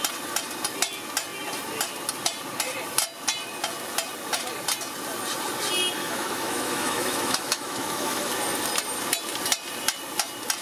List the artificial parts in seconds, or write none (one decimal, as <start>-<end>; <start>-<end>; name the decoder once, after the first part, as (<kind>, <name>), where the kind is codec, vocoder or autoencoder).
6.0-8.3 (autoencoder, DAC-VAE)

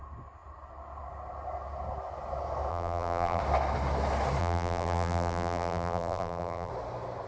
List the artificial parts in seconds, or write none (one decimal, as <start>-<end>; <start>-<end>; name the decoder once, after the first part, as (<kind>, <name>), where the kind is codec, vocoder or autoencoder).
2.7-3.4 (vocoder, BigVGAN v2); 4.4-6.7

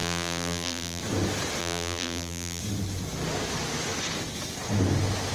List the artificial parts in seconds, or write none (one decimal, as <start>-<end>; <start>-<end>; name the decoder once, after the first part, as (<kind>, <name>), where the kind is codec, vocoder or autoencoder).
0.0-1.0 (vocoder, BigVGAN v2); 1.6-2.6